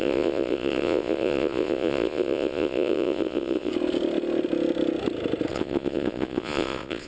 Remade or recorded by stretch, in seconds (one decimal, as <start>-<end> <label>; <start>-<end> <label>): 0.0-3.7 remade; 3.7-5.5 recorded; 5.5-7.1 remade